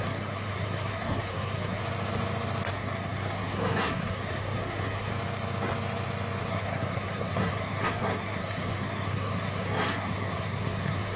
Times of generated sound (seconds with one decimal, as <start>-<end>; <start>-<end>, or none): 0.0-1.8; 2.7-5.1; 6.5-11.2